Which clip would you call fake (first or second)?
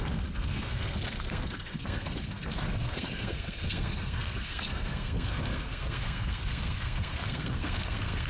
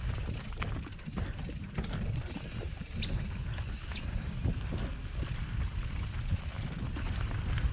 first